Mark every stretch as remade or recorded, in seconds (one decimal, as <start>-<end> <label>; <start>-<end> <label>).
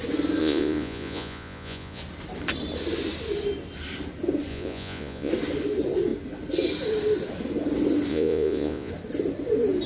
0.0-0.4 recorded; 0.4-2.0 remade; 2.0-4.5 recorded; 4.5-5.3 remade; 5.3-8.1 recorded; 8.1-8.9 remade; 8.9-9.9 recorded